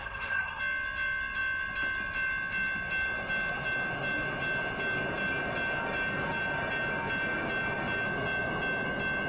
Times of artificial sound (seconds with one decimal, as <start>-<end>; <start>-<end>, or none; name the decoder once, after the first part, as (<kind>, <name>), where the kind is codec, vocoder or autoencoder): 0.0-0.6 (codec, SNAC)